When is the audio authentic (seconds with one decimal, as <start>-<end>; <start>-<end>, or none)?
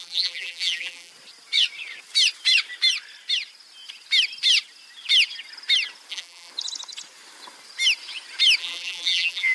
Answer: 1.1-6.1; 6.5-8.6